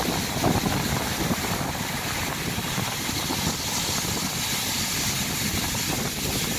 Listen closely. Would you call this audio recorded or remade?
recorded